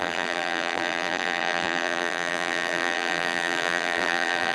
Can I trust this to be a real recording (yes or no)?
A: no